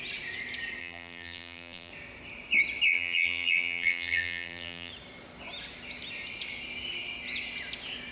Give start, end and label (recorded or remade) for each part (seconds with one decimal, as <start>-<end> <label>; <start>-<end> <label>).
0.0-0.8 recorded; 0.8-1.9 remade; 1.9-2.9 recorded; 2.9-4.9 remade; 4.9-8.1 recorded